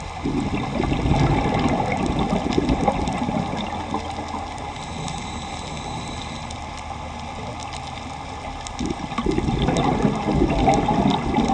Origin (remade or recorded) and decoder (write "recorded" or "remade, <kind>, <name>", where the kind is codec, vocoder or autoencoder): recorded